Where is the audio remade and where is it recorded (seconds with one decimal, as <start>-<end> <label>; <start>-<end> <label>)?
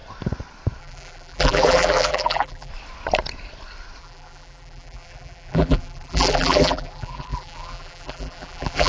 0.0-0.8 recorded; 0.8-2.7 remade; 2.7-4.0 recorded; 4.0-8.9 remade